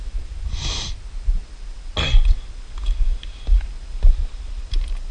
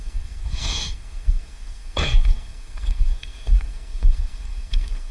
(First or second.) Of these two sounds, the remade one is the second